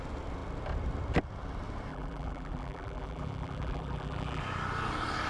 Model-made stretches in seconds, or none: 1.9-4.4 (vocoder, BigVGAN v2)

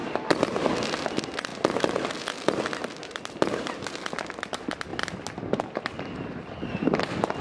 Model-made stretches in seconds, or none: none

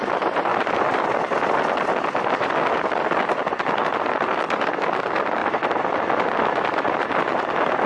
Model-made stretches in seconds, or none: none

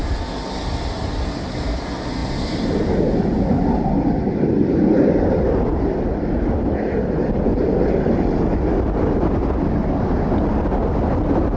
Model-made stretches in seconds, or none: none

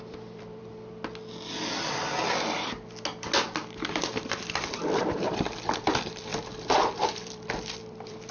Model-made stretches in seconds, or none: 0.0-0.7 (vocoder, BigVGAN v2); 4.7-8.3

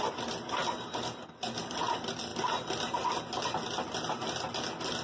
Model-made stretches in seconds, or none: none

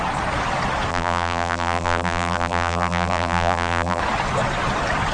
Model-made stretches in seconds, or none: 0.9-4.0 (vocoder, BigVGAN v2)

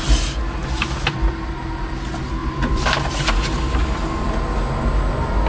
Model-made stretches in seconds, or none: 0.6-1.3 (vocoder, BigVGAN v2); 2.4-3.8